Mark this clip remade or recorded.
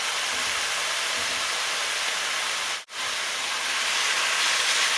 remade